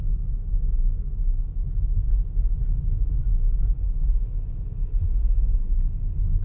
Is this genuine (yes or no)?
yes